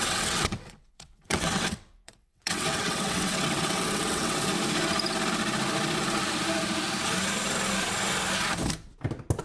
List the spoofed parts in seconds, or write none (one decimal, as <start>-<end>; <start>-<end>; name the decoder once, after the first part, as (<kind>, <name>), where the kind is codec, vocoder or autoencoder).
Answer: 0.0-4.5 (vocoder, WaveNeXt)